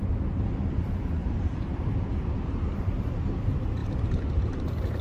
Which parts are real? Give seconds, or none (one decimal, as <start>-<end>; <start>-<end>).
0.0-1.2; 3.1-3.8